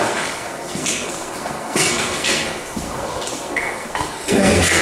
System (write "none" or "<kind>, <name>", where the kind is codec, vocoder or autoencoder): codec, SNAC